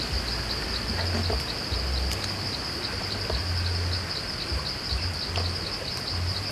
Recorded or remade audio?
recorded